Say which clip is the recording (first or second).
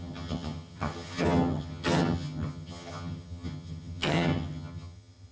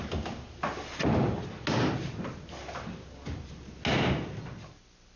second